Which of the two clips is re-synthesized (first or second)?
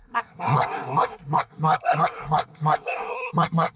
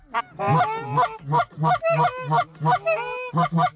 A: first